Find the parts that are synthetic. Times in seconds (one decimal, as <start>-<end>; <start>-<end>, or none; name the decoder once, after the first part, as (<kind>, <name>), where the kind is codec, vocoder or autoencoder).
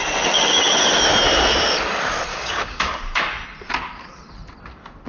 2.3-3.2 (codec, DAC)